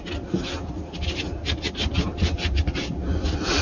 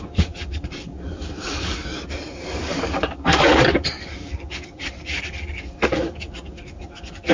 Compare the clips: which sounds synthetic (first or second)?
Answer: second